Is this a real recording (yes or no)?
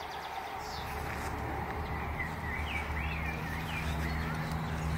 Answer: yes